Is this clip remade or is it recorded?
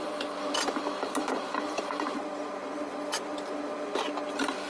recorded